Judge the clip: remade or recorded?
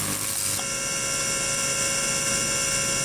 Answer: recorded